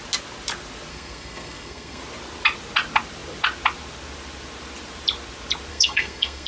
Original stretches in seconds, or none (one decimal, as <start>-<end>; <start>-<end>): 0.0-0.9; 2.0-5.7